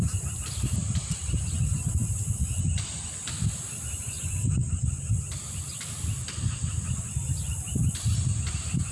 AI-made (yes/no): no